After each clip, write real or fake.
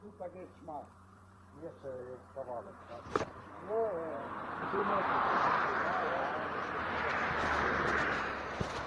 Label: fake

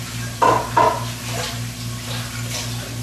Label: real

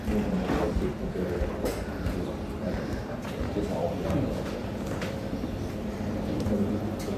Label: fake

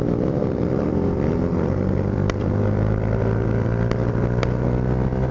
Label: fake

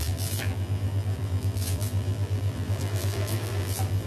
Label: fake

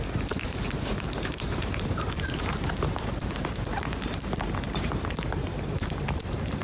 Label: fake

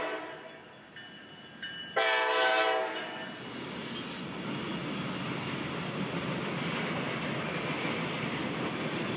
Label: real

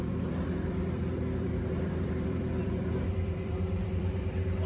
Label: fake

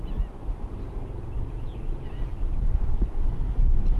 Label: fake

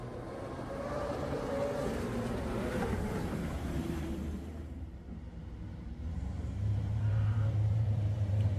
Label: fake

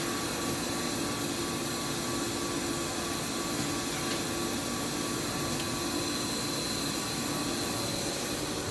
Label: real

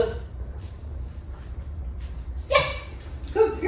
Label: fake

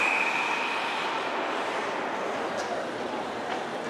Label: real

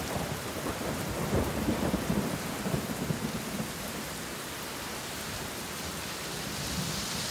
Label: fake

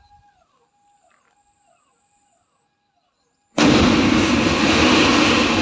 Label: real